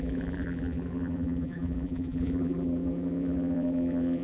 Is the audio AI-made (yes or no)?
yes